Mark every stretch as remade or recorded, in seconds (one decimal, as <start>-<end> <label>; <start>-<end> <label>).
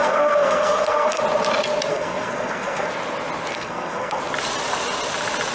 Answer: 0.0-1.2 remade; 1.2-1.9 recorded; 1.9-2.9 remade; 2.9-3.5 recorded; 3.5-4.2 remade; 4.2-5.5 recorded